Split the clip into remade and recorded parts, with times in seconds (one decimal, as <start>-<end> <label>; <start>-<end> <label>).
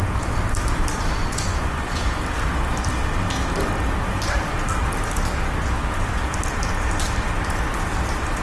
0.0-1.2 recorded; 1.2-2.0 remade; 2.0-8.4 recorded